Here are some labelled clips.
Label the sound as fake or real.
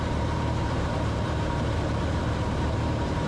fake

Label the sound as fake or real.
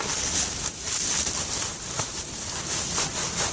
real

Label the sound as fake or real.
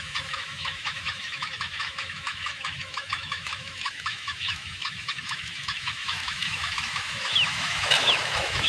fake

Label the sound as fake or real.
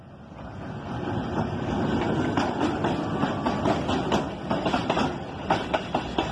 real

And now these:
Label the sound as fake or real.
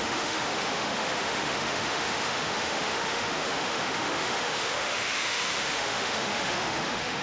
fake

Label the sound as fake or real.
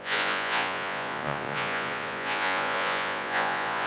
fake